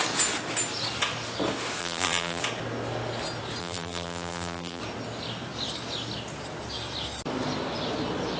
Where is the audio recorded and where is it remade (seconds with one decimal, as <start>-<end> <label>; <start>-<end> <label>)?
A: 0.0-1.8 recorded; 1.8-2.4 remade; 2.4-3.6 recorded; 3.6-4.8 remade; 4.8-8.4 recorded